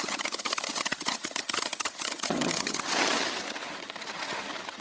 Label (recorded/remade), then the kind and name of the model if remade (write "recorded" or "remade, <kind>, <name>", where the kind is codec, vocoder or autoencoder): remade, vocoder, HiFi-GAN